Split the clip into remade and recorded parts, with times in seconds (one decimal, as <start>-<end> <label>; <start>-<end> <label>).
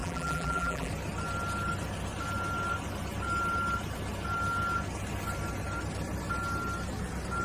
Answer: 0.0-0.9 remade; 0.9-7.4 recorded